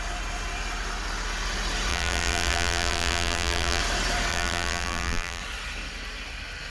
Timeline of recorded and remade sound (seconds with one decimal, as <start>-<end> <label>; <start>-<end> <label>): 0.0-1.9 recorded; 1.9-3.8 remade; 3.8-4.3 recorded; 4.3-5.4 remade; 5.4-6.7 recorded